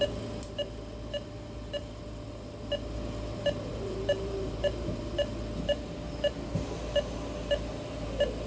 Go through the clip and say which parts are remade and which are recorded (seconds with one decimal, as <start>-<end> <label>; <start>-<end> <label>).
0.0-3.7 recorded; 3.7-5.0 remade; 5.0-8.5 recorded